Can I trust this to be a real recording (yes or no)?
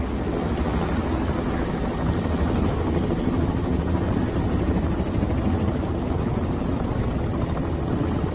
yes